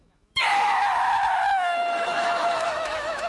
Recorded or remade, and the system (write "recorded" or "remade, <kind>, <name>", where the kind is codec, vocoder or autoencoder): remade, autoencoder, DAC-VAE